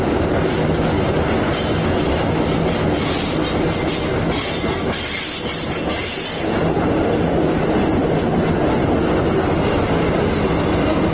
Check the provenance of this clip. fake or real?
real